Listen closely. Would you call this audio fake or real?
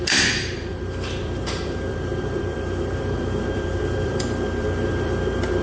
fake